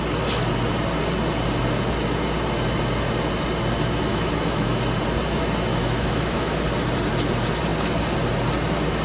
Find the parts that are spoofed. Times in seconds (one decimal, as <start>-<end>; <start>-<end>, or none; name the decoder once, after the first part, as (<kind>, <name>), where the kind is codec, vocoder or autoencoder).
4.1-4.8 (autoencoder, DAC-VAE); 5.7-6.6